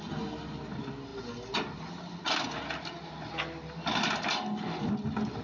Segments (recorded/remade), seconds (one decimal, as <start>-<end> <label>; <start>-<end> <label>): 0.0-5.4 recorded

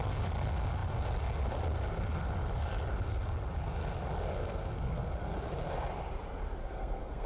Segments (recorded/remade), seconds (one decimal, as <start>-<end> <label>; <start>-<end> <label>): 0.0-4.4 recorded; 4.4-5.1 remade; 5.1-6.6 recorded; 6.6-7.3 remade